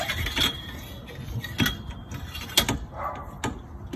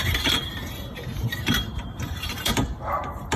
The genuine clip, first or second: first